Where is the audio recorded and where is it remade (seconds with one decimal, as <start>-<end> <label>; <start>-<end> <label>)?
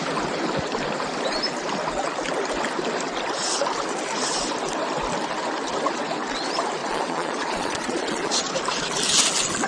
0.0-6.8 recorded; 6.8-8.5 remade; 8.5-9.7 recorded